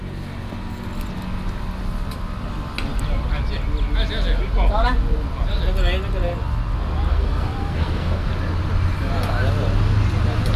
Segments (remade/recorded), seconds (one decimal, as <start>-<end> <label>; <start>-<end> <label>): 0.0-7.1 recorded; 7.1-8.3 remade; 8.3-10.6 recorded